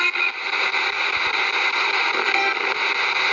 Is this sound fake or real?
real